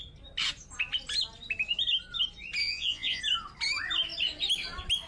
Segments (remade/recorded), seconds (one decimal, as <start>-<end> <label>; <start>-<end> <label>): 0.0-2.6 recorded; 2.6-3.2 remade; 3.2-5.1 recorded